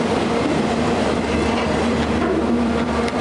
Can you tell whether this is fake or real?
fake